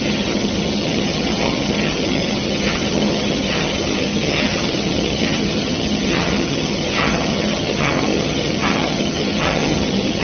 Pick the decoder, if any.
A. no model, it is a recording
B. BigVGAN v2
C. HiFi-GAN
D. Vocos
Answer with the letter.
C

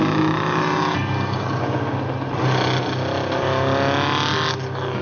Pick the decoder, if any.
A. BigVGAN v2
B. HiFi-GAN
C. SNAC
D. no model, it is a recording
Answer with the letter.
D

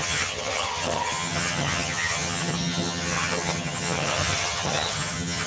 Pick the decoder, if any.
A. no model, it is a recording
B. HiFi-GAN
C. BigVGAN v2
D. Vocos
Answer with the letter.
B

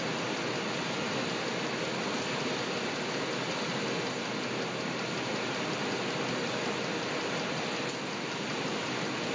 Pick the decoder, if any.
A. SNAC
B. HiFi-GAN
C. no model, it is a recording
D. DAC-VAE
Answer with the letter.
C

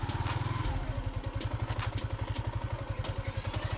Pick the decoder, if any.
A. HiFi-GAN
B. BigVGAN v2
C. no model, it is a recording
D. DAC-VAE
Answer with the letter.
C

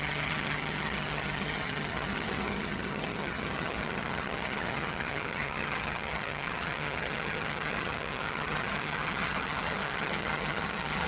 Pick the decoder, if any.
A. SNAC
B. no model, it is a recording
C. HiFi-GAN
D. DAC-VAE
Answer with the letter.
C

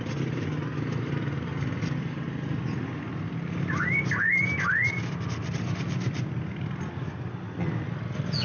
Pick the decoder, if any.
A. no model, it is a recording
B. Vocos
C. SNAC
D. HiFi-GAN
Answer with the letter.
A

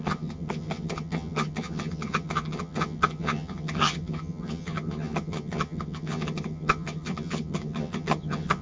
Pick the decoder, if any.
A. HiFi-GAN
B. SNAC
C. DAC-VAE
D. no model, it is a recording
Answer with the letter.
A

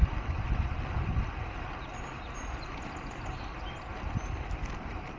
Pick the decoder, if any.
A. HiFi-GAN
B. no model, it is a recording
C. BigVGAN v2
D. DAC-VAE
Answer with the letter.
B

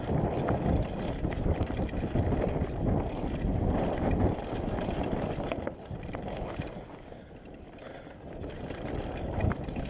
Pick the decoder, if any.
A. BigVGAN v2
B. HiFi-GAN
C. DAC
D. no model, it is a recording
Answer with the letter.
D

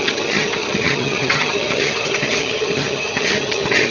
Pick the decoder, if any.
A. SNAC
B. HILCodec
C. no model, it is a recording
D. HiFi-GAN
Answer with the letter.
D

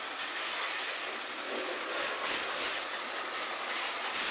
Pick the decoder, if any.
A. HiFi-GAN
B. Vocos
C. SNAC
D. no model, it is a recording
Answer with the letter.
D